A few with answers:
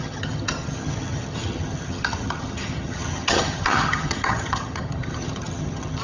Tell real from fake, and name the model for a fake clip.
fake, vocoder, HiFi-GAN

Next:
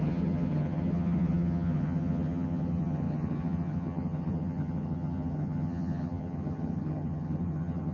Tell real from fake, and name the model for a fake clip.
fake, vocoder, HiFi-GAN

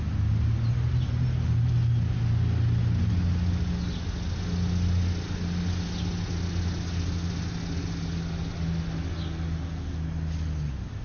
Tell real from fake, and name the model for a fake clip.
real